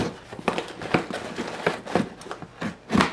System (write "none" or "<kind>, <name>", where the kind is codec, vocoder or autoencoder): none